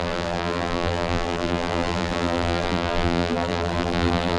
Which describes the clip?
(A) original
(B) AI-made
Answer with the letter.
B